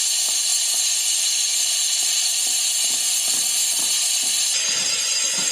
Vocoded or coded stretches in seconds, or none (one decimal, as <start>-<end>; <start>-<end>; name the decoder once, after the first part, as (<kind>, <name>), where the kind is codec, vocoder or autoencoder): none